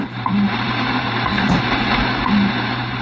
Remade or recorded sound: remade